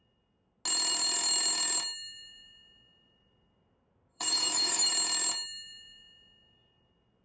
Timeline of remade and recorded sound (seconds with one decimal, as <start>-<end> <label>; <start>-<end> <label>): 0.0-4.1 recorded; 4.1-4.9 remade; 4.9-7.2 recorded